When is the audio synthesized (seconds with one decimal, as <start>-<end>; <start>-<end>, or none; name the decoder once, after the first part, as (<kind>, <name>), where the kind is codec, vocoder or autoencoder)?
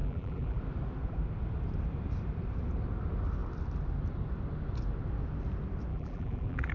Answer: 0.0-0.6 (vocoder, BigVGAN v2); 5.9-6.7